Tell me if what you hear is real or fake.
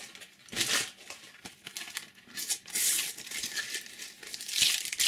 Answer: real